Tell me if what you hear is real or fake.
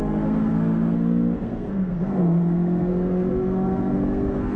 fake